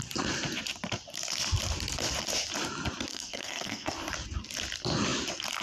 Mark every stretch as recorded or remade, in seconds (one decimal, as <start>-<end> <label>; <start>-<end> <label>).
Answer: 0.0-3.1 recorded; 3.1-3.9 remade; 3.9-5.6 recorded